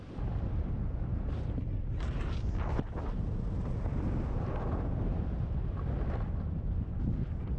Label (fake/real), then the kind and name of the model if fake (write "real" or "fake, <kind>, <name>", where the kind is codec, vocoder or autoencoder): real